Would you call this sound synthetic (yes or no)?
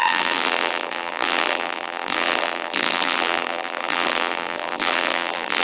yes